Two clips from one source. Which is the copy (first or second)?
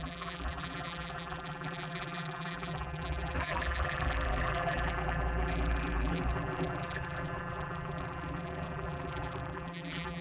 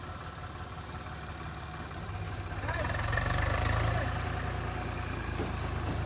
first